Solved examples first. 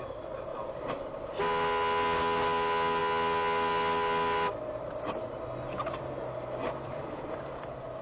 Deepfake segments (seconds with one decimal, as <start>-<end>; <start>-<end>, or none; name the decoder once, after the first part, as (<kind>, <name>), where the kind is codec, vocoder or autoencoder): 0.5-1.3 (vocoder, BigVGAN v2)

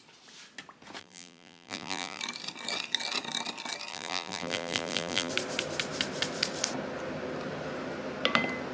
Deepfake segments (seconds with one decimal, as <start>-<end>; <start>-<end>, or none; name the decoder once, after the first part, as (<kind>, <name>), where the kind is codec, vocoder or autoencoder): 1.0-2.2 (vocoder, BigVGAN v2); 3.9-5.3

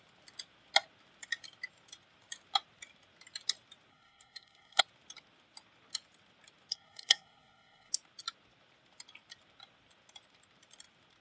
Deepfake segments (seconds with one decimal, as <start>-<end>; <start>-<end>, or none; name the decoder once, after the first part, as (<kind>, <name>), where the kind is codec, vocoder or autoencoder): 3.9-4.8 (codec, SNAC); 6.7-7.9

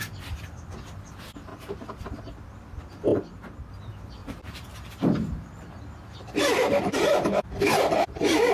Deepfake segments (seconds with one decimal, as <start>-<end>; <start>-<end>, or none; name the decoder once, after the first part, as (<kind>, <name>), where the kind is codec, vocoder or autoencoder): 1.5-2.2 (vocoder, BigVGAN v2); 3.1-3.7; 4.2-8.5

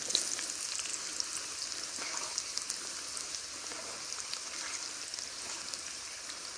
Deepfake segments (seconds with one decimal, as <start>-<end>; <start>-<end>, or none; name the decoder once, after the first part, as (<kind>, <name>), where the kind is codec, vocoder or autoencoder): none